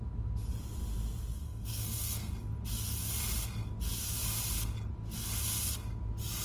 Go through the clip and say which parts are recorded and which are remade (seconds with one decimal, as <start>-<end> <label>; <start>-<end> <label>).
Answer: 0.0-1.3 recorded; 1.3-2.3 remade; 2.3-6.4 recorded